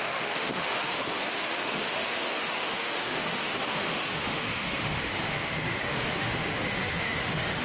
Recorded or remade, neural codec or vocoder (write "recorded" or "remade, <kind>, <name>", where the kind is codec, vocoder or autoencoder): remade, autoencoder, DAC-VAE